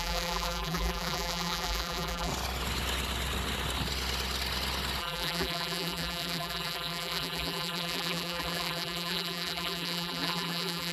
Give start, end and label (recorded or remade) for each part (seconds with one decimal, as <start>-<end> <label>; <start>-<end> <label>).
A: 0.0-2.3 remade; 2.3-5.0 recorded; 5.0-10.9 remade